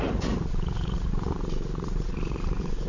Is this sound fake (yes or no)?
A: yes